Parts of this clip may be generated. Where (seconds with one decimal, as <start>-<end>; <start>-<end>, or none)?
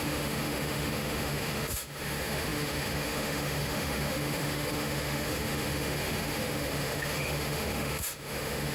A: 0.0-8.7